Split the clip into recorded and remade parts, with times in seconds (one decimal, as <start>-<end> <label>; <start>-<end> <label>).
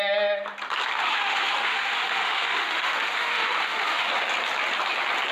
0.0-1.0 recorded; 1.0-4.1 remade; 4.1-5.3 recorded